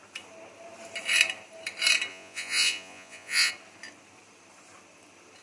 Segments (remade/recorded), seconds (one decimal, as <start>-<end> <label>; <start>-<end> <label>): 0.0-2.1 recorded; 2.1-3.5 remade; 3.5-5.4 recorded